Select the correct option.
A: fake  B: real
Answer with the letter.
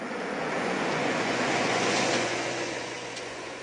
A